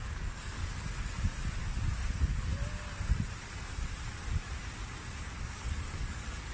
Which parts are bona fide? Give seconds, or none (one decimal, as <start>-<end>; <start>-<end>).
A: 0.6-2.1; 2.5-5.2